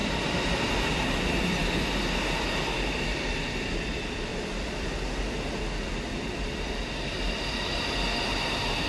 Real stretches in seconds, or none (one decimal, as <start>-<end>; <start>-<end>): 0.9-4.3; 4.9-8.9